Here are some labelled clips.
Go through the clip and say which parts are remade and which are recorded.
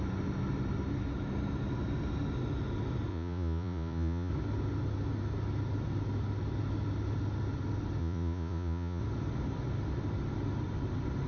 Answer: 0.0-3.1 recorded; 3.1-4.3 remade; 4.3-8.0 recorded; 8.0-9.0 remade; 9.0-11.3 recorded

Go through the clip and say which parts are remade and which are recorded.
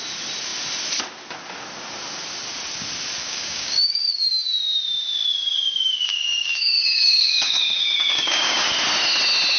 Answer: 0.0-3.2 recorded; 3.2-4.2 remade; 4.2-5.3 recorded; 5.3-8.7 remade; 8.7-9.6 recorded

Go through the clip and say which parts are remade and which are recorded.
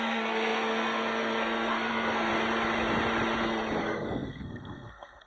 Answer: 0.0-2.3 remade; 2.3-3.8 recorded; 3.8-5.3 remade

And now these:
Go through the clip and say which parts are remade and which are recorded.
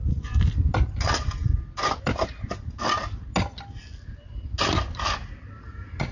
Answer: 0.0-6.1 recorded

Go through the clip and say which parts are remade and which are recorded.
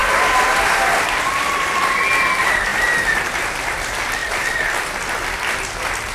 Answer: 0.0-1.8 remade; 1.8-6.1 recorded